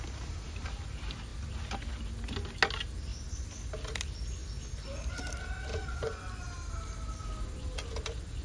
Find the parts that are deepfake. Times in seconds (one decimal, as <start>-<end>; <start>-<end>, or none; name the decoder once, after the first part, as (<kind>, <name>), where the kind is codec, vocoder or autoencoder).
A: 5.7-6.4 (vocoder, Vocos)